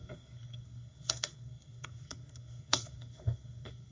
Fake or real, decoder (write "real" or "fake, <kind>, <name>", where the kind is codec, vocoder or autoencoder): fake, codec, SNAC